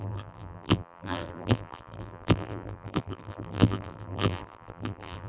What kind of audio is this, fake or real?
fake